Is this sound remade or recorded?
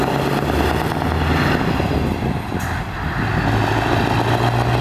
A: recorded